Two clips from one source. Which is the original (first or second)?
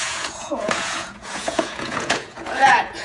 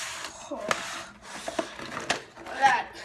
second